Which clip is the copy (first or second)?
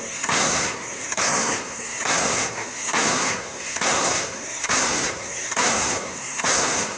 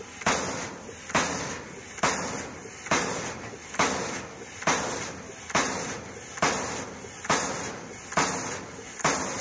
first